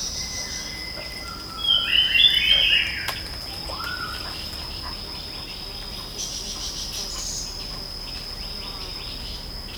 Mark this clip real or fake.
real